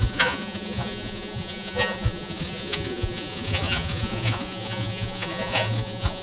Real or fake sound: fake